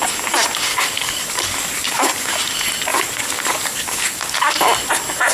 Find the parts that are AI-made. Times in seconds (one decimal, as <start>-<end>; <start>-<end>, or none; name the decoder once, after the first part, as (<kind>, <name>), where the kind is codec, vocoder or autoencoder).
0.7-2.3 (codec, DAC); 2.9-4.5